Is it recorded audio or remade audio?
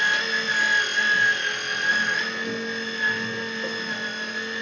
recorded